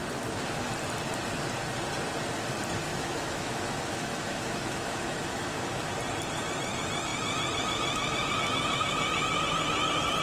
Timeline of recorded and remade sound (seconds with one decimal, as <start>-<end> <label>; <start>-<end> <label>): 0.0-2.9 recorded; 2.9-5.9 remade; 5.9-10.2 recorded